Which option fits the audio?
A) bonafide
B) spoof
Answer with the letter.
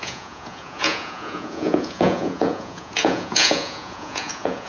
B